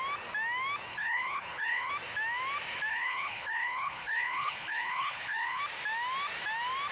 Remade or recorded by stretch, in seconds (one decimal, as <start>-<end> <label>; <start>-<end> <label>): 0.0-0.9 recorded; 0.9-1.9 remade; 1.9-2.9 recorded; 2.9-5.6 remade; 5.6-6.9 recorded